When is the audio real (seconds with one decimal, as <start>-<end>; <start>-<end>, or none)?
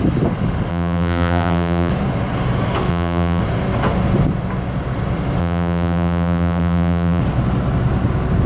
0.0-0.7; 1.9-2.9; 3.4-5.4; 7.2-8.5